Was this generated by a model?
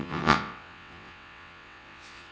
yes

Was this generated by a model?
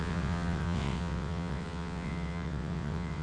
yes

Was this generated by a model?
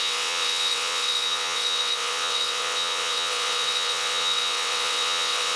yes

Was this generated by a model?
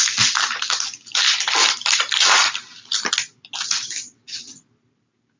no